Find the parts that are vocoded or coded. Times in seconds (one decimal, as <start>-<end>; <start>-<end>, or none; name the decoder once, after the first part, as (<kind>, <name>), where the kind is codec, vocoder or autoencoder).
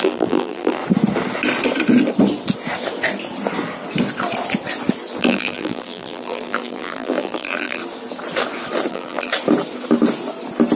0.0-0.8 (vocoder, BigVGAN v2); 5.2-7.8; 8.9-9.3